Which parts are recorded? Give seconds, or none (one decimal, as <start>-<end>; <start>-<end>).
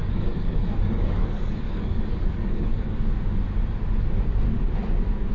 3.1-5.3